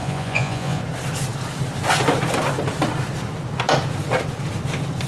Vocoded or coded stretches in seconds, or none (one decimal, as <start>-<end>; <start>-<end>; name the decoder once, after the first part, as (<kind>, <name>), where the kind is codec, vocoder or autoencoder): 0.0-0.8 (vocoder, Vocos)

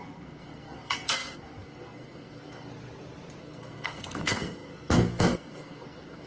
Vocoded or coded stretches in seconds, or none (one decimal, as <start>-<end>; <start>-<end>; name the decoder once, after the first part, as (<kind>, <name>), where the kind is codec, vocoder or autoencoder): 0.0-2.7 (codec, SNAC); 3.4-6.3

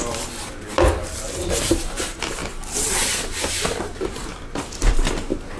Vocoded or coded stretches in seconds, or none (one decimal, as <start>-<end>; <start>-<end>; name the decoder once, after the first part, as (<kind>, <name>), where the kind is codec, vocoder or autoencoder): none

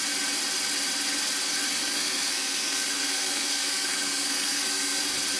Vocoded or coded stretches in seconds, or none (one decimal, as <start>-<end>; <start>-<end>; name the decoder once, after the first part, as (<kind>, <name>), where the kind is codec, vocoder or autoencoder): 1.8-5.0 (codec, SNAC)